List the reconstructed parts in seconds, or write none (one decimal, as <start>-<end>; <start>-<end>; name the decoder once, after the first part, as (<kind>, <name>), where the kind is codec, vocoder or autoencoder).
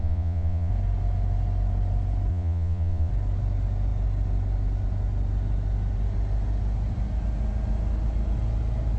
0.0-0.7 (vocoder, Vocos); 2.3-3.1